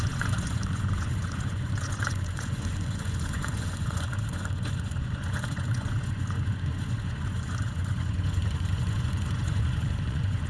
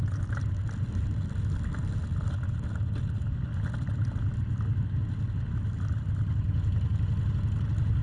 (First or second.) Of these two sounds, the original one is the second